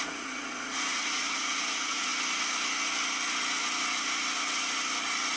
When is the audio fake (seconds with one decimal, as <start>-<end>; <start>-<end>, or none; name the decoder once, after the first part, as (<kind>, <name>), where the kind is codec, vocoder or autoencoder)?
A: 0.0-2.1 (vocoder, Vocos)

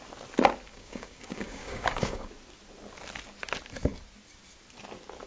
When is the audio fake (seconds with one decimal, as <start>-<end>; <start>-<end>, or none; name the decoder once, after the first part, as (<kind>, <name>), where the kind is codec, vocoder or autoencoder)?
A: 0.7-2.3 (codec, DAC)

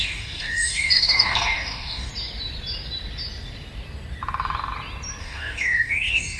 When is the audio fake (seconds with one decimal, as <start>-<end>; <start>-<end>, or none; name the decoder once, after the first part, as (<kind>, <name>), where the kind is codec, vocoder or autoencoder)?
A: 0.0-2.1 (codec, DAC); 5.2-6.4

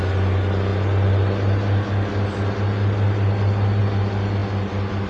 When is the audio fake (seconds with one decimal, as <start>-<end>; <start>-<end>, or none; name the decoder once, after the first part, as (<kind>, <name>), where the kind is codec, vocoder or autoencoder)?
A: none

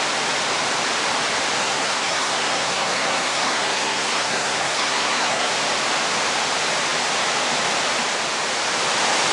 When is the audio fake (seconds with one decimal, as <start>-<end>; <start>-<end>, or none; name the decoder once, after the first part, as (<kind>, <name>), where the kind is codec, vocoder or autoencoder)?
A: 1.6-5.5 (codec, SNAC)